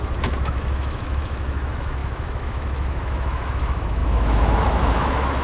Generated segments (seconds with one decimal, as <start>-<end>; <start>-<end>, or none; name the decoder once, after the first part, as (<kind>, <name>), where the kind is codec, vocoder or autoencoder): 0.0-5.4 (autoencoder, DAC-VAE)